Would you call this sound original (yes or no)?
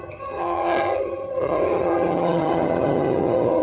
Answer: no